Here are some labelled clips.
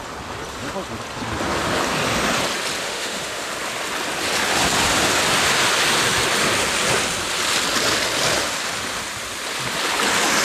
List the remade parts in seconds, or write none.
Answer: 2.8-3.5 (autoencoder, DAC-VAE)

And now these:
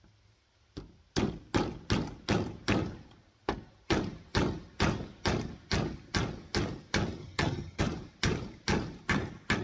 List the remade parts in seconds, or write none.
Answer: 7.2-7.8 (vocoder, HiFi-GAN)

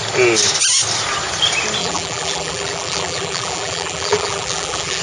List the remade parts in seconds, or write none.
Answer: 1.8-5.0 (vocoder, BigVGAN v2)

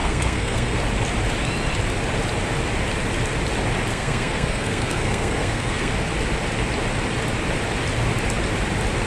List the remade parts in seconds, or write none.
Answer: 0.0-0.8 (codec, SNAC); 3.9-5.9